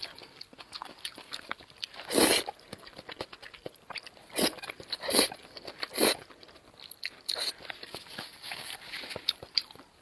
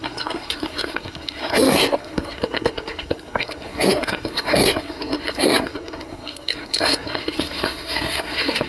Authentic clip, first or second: first